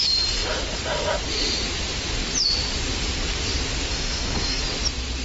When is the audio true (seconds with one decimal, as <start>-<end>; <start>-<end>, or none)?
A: 0.0-3.9; 4.6-5.2